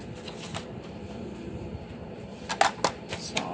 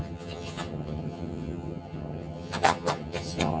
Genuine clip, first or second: first